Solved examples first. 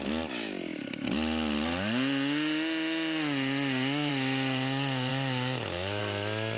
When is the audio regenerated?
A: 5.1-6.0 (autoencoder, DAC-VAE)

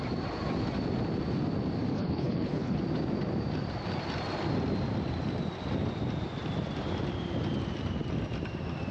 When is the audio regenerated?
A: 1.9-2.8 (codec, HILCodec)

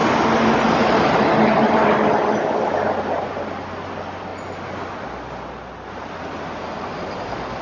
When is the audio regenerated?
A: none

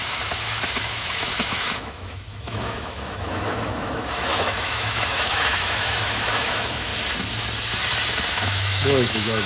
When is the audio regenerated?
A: 0.0-6.9 (autoencoder, DAC-VAE); 8.3-9.5

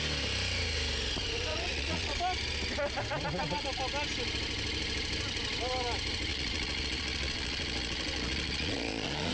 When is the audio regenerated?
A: 1.5-2.2 (vocoder, Vocos); 6.3-9.3